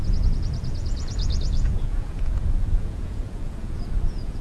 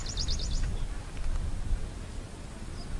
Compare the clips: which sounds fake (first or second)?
first